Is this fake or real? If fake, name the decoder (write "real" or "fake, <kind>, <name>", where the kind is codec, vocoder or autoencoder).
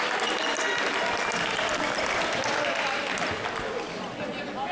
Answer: real